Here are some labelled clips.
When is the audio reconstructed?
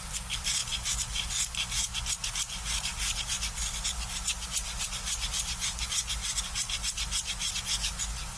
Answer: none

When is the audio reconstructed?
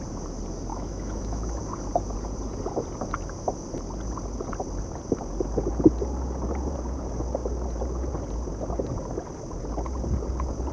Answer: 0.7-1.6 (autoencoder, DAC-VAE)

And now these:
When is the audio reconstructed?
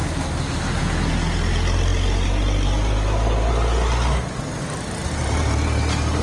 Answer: none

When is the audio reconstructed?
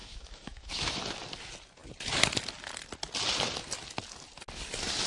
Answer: 0.0-1.0 (autoencoder, DAC-VAE)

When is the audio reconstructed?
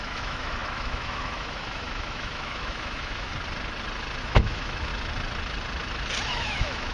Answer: 0.0-3.3 (autoencoder, DAC-VAE); 4.2-4.9; 6.3-6.9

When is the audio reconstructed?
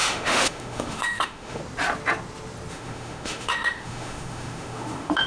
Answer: 0.0-1.6 (autoencoder, DAC-VAE); 2.7-5.3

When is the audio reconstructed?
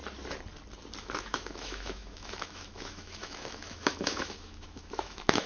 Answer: 1.0-5.5 (autoencoder, DAC-VAE)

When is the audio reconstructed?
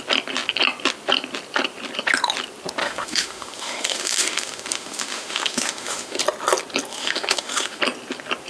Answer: 2.8-6.2 (autoencoder, DAC-VAE); 6.9-7.8